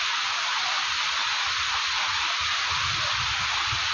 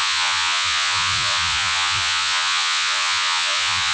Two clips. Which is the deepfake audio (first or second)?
second